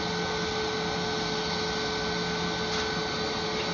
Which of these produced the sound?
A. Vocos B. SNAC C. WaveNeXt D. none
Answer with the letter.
D